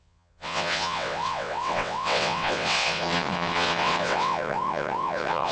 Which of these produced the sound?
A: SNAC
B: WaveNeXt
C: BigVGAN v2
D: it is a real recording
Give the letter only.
B